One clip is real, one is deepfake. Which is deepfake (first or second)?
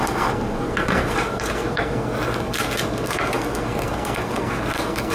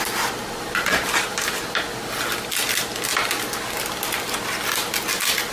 first